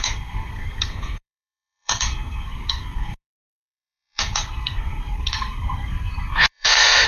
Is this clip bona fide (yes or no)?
no